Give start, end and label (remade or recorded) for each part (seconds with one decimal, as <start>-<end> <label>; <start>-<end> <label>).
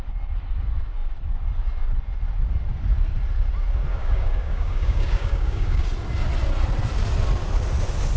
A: 0.0-3.9 recorded; 3.9-5.8 remade; 5.8-8.2 recorded